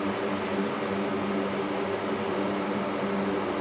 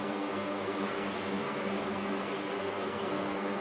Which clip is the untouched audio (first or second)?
first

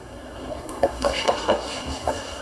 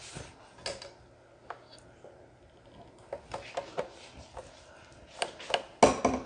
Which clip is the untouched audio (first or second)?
second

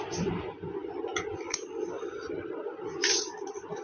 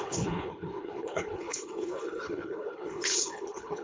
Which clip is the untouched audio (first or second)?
first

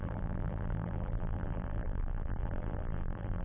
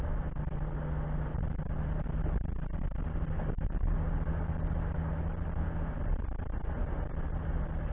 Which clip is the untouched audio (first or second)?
second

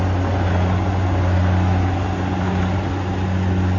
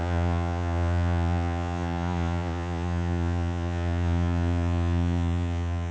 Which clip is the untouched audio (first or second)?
first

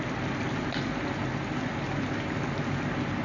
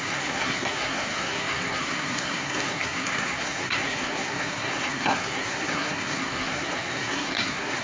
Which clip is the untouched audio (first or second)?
first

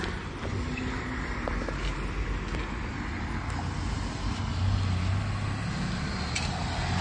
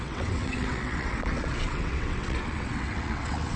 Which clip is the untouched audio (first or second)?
first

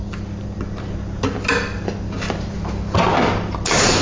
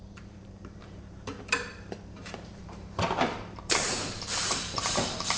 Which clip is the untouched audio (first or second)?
first